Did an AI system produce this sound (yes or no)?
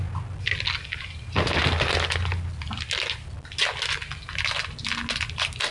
no